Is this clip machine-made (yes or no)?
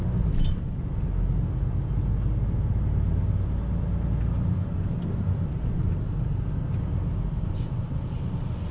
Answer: no